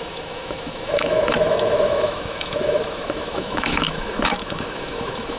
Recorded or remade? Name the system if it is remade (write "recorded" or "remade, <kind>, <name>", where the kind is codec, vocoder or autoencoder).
remade, autoencoder, DAC-VAE